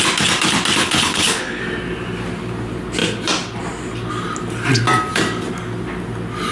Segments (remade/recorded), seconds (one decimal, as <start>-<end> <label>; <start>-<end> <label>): 0.0-0.8 recorded; 0.8-1.6 remade; 1.6-6.5 recorded